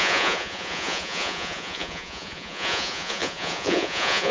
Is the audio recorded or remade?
remade